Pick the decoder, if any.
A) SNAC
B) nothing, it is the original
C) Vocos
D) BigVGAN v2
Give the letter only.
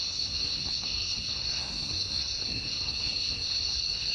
A